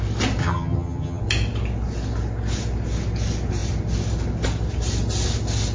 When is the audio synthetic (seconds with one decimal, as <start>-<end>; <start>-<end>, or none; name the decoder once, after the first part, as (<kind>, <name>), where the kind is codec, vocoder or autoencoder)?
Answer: 0.4-1.2 (vocoder, HiFi-GAN)